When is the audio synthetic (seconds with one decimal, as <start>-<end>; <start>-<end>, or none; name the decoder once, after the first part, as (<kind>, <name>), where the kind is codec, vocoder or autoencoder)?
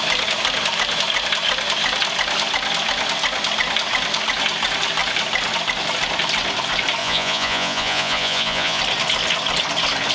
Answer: 7.0-8.8 (vocoder, Vocos)